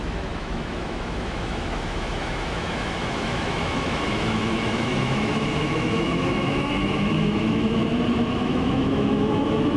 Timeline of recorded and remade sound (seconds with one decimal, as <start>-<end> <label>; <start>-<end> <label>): 0.0-7.8 remade; 7.8-8.3 recorded; 8.3-9.8 remade